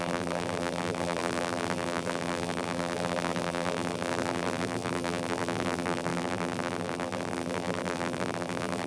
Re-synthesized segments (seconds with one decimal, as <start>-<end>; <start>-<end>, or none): 0.0-8.9